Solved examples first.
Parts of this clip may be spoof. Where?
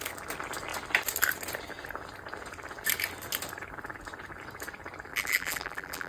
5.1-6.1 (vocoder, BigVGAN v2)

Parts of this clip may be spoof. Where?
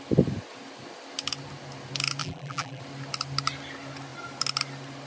2.2-2.8 (vocoder, BigVGAN v2)